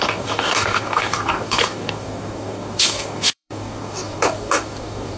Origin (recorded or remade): remade